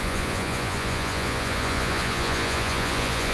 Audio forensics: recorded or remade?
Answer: remade